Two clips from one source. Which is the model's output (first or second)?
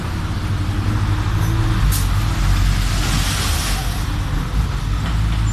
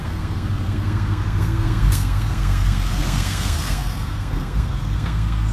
second